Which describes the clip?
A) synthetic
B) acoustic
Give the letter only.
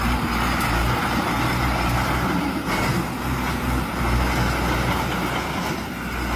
B